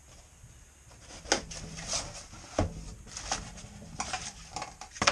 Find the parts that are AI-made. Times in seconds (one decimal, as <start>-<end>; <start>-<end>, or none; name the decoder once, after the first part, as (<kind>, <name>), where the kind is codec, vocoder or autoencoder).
none